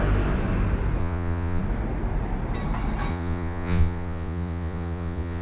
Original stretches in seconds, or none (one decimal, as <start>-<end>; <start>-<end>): 0.0-1.0; 1.6-3.1

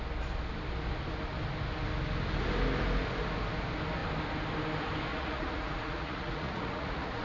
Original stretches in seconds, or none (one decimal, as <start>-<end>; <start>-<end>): 0.0-5.1

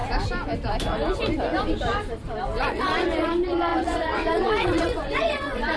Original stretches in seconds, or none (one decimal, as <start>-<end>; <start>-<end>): 0.0-2.5

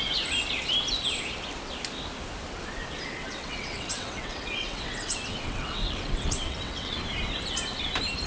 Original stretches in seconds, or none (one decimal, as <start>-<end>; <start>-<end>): 0.0-3.2; 7.0-8.3

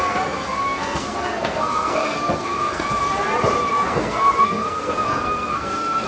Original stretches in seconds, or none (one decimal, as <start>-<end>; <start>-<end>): 3.0-3.7